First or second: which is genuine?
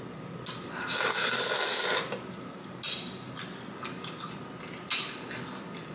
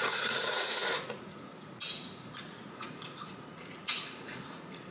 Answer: first